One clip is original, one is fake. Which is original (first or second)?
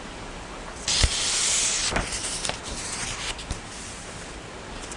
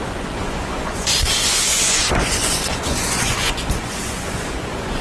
first